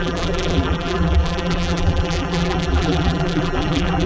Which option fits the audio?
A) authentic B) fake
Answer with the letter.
B